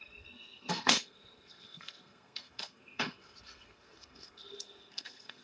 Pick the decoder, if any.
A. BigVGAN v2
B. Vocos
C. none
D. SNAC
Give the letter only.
D